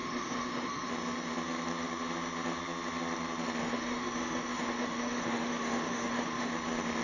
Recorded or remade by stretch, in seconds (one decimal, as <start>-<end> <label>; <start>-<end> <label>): 0.0-0.9 remade; 0.9-3.6 recorded; 3.6-6.5 remade; 6.5-7.0 recorded